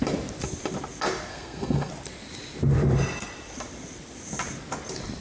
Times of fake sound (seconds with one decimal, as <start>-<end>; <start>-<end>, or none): 1.3-1.9